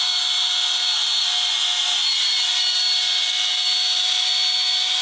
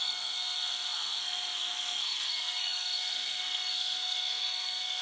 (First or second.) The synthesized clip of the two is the second